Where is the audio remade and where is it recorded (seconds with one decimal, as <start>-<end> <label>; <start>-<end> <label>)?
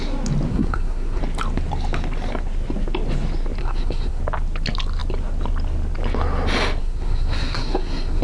0.0-0.5 recorded; 0.5-1.2 remade; 1.2-3.6 recorded; 3.6-4.2 remade; 4.2-6.8 recorded; 6.8-8.2 remade